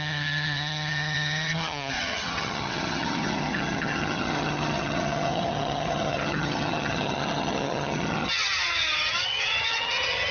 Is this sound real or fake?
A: fake